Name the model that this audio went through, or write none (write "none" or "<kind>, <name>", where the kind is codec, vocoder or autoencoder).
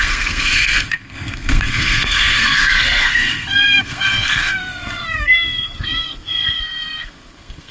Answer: codec, SNAC